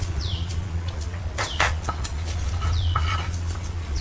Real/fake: fake